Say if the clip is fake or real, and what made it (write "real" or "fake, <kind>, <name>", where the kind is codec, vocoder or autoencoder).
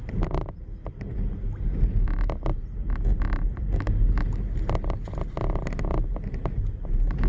real